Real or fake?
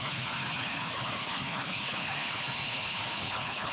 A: fake